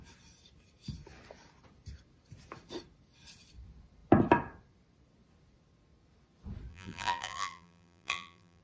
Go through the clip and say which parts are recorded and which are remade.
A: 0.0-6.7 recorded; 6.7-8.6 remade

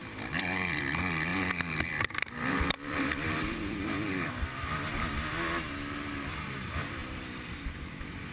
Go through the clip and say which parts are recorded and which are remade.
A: 0.0-0.8 remade; 0.8-1.3 recorded; 1.3-4.3 remade; 4.3-7.0 recorded; 7.0-7.9 remade; 7.9-8.3 recorded

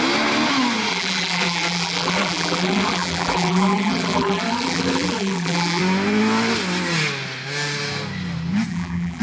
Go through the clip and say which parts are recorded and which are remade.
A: 0.0-0.9 recorded; 0.9-5.8 remade; 5.8-8.7 recorded; 8.7-9.2 remade

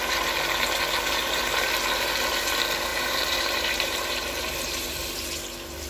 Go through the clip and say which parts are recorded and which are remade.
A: 0.0-2.9 recorded; 2.9-5.1 remade; 5.1-5.9 recorded

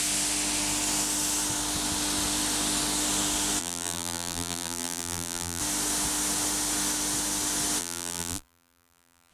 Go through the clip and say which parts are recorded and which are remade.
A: 0.0-3.6 recorded; 3.6-5.6 remade; 5.6-7.8 recorded; 7.8-9.3 remade

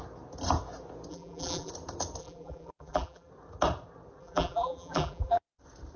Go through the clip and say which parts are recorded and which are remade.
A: 0.0-1.1 recorded; 1.1-1.7 remade; 1.7-2.2 recorded; 2.2-3.3 remade; 3.3-4.2 recorded; 4.2-5.6 remade; 5.6-6.0 recorded